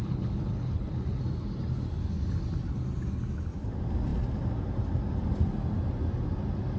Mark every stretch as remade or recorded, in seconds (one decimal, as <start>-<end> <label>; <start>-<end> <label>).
0.0-1.2 remade; 1.2-6.8 recorded